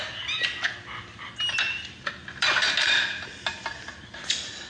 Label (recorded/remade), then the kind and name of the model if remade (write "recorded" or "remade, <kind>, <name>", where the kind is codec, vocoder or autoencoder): recorded